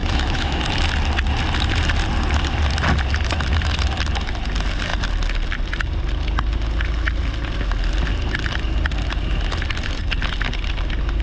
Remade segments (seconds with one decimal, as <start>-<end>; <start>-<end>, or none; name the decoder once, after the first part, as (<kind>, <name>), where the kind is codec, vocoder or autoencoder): 0.0-0.6 (autoencoder, DAC-VAE)